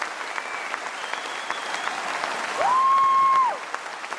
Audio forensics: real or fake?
real